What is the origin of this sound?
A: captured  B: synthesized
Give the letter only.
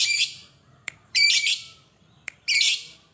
B